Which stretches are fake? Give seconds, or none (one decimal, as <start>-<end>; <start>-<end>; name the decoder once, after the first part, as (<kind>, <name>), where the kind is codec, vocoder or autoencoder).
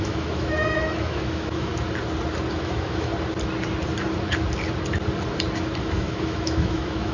0.0-1.7 (autoencoder, DAC-VAE); 2.5-3.1; 5.8-7.1